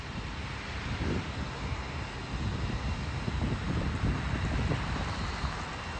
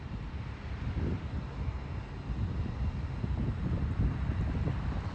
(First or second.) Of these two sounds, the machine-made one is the second